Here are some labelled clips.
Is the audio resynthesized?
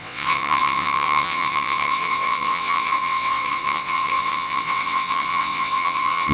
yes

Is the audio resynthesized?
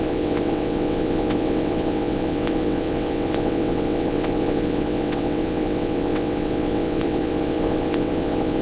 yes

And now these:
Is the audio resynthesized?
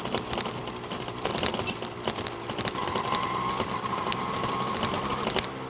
no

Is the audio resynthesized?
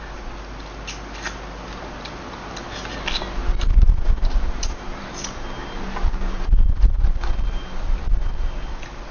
no